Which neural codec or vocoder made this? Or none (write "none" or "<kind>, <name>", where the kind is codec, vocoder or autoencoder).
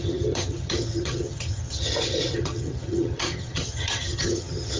vocoder, HiFi-GAN